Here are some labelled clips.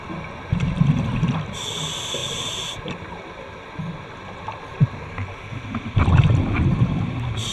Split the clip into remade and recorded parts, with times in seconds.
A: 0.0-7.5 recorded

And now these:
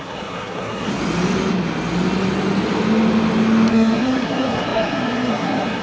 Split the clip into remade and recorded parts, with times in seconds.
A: 0.0-0.9 remade; 0.9-3.7 recorded; 3.7-5.8 remade

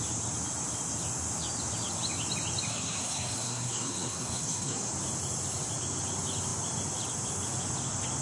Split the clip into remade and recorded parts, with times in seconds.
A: 0.0-2.7 recorded; 2.7-4.9 remade; 4.9-8.2 recorded

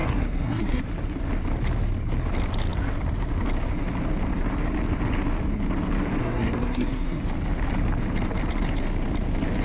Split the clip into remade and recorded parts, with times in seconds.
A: 0.0-0.8 remade; 0.8-6.2 recorded; 6.2-7.2 remade; 7.2-9.6 recorded